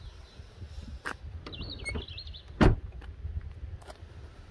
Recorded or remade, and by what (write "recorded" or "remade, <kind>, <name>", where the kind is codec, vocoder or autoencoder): recorded